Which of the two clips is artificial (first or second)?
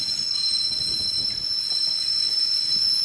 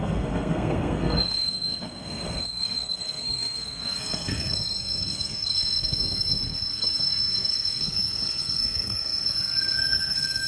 second